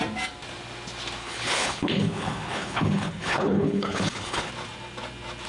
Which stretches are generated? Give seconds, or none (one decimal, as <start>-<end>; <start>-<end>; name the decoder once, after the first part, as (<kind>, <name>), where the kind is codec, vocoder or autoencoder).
1.2-4.5 (codec, HILCodec)